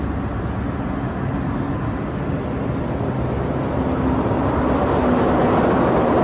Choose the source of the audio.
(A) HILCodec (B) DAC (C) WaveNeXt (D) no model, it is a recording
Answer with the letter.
D